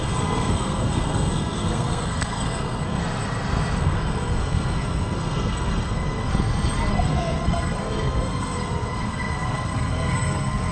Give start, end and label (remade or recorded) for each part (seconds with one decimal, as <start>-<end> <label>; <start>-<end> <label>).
0.0-3.0 remade; 3.0-3.8 recorded; 3.8-6.3 remade; 6.3-6.9 recorded; 6.9-10.7 remade